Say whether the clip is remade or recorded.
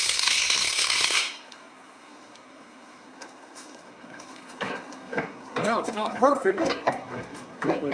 remade